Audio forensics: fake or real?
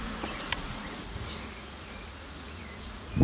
fake